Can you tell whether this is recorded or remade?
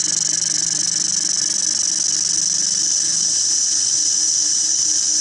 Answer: recorded